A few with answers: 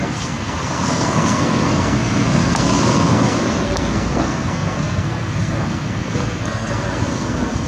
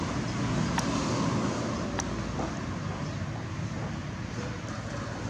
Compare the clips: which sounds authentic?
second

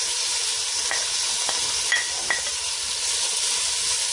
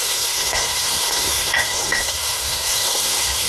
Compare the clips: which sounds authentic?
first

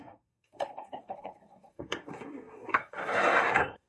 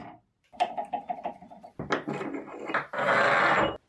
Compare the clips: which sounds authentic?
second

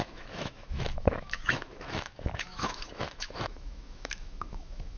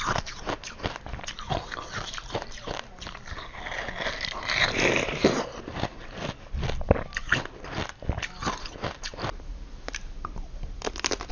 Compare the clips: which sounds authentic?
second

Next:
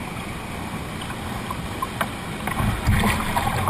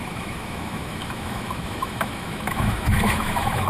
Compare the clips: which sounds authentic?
first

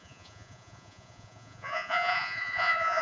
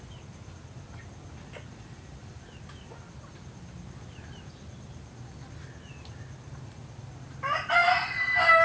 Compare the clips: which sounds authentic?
second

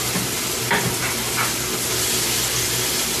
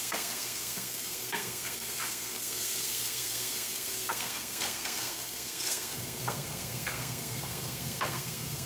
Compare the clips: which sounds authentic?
first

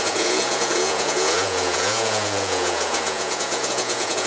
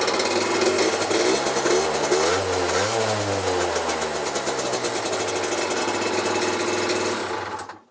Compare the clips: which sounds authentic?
second